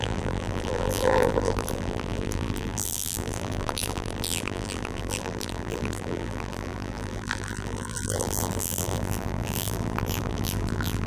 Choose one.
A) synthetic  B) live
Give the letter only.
A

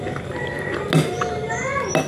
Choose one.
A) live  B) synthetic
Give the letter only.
A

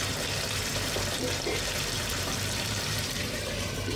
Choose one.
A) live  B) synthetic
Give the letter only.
B